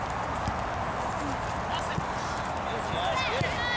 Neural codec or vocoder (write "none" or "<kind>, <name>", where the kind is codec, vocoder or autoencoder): none